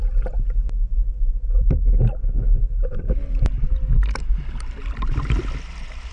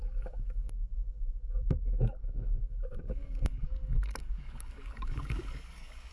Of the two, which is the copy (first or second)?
second